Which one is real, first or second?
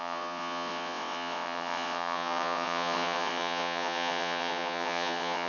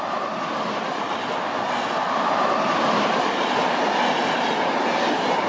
second